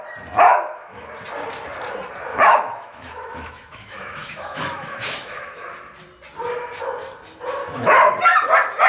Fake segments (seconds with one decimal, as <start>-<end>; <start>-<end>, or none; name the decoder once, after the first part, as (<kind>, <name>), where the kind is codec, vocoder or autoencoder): 0.5-1.1 (autoencoder, DAC-VAE); 2.3-5.7; 7.6-8.2